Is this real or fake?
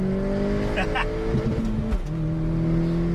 real